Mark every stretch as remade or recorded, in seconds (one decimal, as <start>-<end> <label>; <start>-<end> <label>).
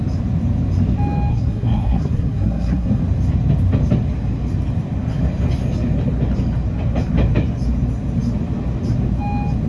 0.0-1.3 recorded; 1.3-3.0 remade; 3.0-9.7 recorded